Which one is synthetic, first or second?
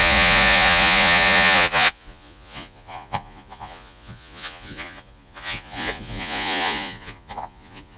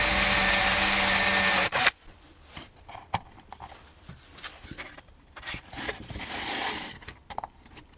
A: first